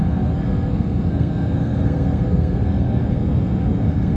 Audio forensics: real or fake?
fake